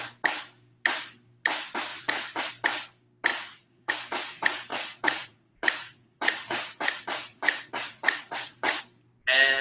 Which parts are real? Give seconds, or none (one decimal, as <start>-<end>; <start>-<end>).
0.0-1.9; 2.5-3.3; 3.9-4.7; 8.8-9.6